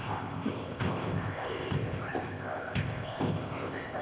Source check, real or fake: fake